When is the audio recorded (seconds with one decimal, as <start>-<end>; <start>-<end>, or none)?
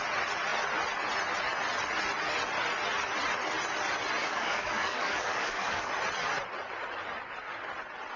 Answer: 0.0-4.2; 5.9-8.2